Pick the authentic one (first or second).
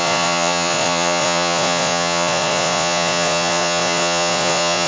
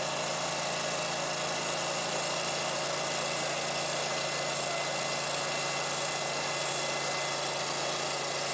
second